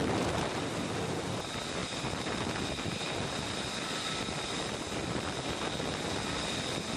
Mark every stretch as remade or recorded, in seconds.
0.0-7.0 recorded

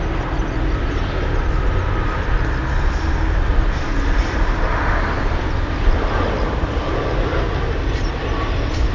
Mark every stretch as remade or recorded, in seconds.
0.0-3.9 recorded; 3.9-8.2 remade; 8.2-8.9 recorded

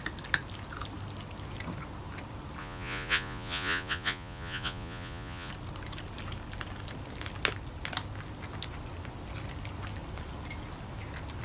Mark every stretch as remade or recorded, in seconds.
0.0-2.6 recorded; 2.6-5.5 remade; 5.5-11.4 recorded

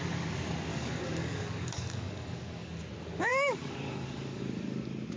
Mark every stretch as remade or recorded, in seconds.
0.0-0.7 recorded; 0.7-2.7 remade; 2.7-3.3 recorded; 3.3-4.4 remade; 4.4-5.2 recorded

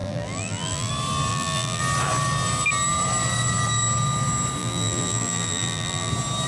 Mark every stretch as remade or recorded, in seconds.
0.0-0.9 remade; 0.9-1.3 recorded; 1.3-1.8 remade; 1.8-4.6 recorded; 4.6-6.1 remade; 6.1-6.5 recorded

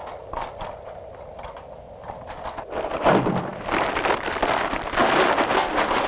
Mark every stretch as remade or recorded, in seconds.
0.0-2.6 remade; 2.6-3.5 recorded; 3.5-4.0 remade; 4.0-6.1 recorded